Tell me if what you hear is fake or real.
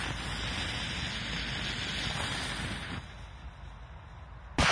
real